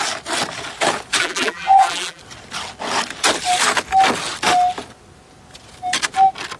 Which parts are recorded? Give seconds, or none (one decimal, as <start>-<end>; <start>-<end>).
0.0-1.2; 2.2-6.6